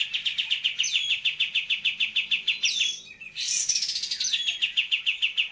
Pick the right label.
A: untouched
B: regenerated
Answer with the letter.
A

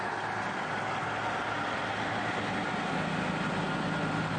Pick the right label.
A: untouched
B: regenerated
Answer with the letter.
A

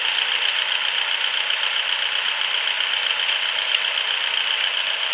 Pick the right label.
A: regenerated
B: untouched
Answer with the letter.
B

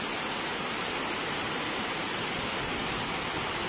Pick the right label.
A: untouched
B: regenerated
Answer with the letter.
A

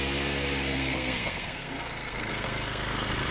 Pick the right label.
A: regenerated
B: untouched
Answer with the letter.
A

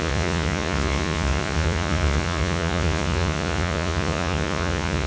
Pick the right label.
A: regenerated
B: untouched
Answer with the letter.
A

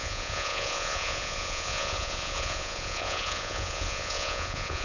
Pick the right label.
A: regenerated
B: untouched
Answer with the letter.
A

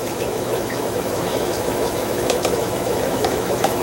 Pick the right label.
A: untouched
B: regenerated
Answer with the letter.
B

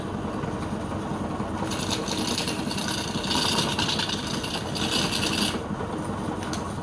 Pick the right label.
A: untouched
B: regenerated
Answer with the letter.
A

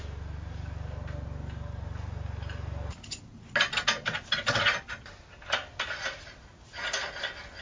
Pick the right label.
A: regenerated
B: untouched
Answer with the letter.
B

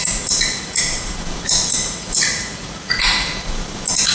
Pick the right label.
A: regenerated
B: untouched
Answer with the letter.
A